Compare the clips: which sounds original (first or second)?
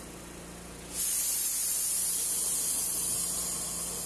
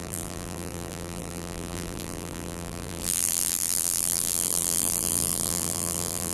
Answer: first